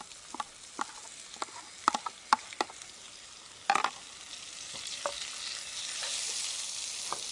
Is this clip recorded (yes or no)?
yes